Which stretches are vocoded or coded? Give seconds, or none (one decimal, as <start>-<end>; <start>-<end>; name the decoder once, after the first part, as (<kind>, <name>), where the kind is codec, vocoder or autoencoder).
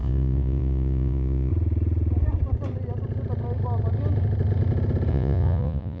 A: 0.0-1.5 (vocoder, Vocos); 5.1-6.0